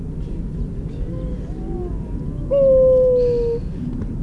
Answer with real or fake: real